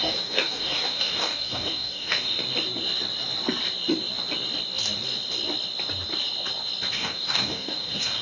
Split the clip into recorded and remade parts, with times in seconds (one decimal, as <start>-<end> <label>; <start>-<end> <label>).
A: 0.0-2.4 remade; 2.4-6.9 recorded; 6.9-8.2 remade